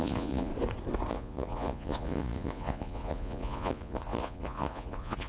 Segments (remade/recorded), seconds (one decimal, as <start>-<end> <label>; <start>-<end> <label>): 0.0-0.5 remade; 0.5-1.1 recorded; 1.1-5.3 remade